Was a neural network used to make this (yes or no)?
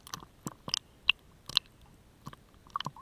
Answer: no